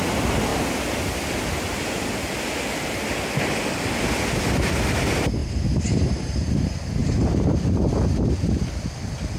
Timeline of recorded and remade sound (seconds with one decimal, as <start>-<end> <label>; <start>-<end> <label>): 0.0-5.4 recorded; 5.4-6.5 remade; 6.5-7.0 recorded; 7.0-7.9 remade; 7.9-9.4 recorded